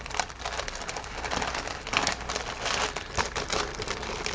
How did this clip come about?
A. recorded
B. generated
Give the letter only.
A